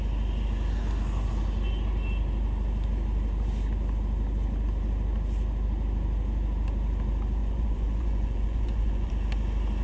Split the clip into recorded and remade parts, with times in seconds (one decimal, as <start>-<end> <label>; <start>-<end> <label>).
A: 0.0-7.4 recorded; 7.4-9.1 remade; 9.1-9.8 recorded